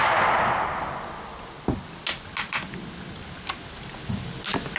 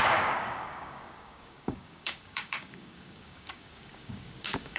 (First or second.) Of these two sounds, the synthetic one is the second